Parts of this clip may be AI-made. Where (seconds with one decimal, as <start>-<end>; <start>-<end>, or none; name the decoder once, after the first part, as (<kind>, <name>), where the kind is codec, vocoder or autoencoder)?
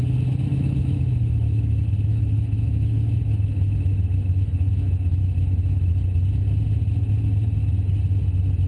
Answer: 0.5-4.7 (autoencoder, DAC-VAE); 5.2-5.9